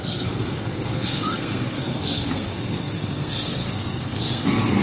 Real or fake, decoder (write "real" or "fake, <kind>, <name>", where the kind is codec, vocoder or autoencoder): fake, codec, SNAC